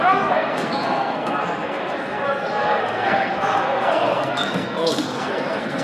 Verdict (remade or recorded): remade